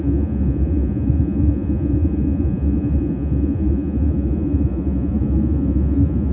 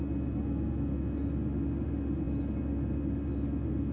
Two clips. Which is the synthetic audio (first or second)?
first